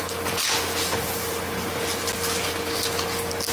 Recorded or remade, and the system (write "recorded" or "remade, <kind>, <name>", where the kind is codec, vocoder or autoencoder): recorded